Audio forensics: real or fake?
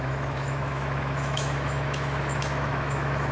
fake